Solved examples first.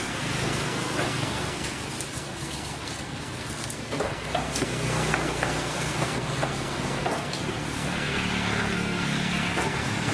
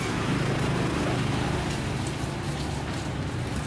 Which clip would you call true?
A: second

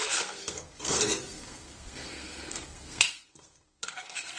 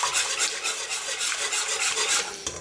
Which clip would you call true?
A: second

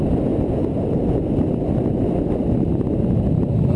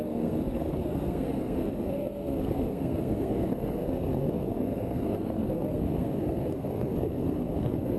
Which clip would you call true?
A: first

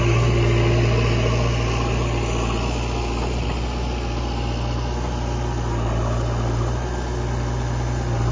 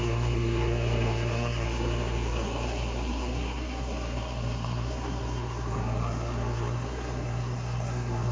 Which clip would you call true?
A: first